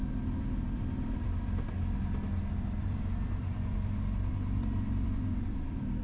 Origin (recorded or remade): remade